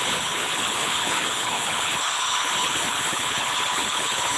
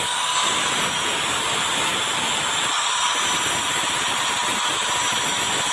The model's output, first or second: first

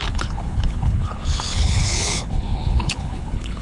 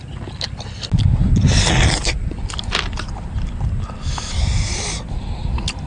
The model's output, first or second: first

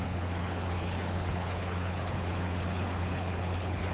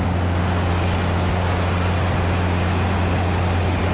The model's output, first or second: first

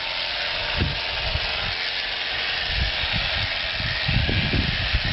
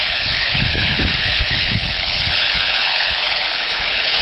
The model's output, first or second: second